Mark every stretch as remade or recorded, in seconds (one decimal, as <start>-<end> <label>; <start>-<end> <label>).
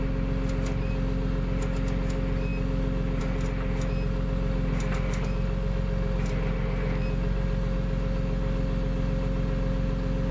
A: 0.0-10.3 recorded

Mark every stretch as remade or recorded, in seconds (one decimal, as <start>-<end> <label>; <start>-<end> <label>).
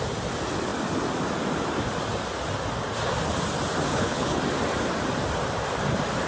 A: 0.0-3.9 recorded; 3.9-4.4 remade; 4.4-6.3 recorded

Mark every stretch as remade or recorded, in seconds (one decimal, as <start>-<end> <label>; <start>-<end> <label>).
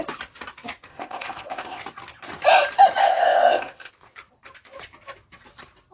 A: 0.0-0.9 recorded; 0.9-1.8 remade; 1.8-3.0 recorded; 3.0-3.9 remade; 3.9-5.9 recorded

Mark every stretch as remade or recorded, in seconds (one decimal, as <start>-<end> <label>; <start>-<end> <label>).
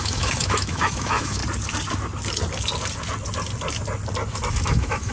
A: 0.0-1.4 remade; 1.4-4.5 recorded; 4.5-5.1 remade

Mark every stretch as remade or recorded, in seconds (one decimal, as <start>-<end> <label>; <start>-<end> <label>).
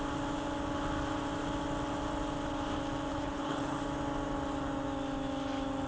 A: 0.0-3.1 recorded; 3.1-3.8 remade; 3.8-5.9 recorded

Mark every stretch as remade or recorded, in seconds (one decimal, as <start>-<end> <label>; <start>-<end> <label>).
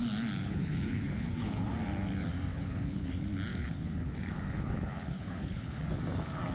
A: 0.0-0.4 recorded; 0.4-1.7 remade; 1.7-2.5 recorded; 2.5-3.1 remade; 3.1-3.5 recorded; 3.5-5.8 remade; 5.8-6.5 recorded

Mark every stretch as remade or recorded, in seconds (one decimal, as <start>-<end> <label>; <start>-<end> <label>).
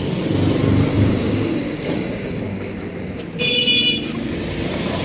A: 0.0-0.9 recorded; 0.9-3.2 remade; 3.2-5.0 recorded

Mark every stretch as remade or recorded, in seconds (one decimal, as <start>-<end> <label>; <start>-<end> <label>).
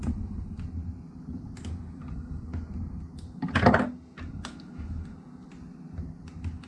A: 0.0-6.7 recorded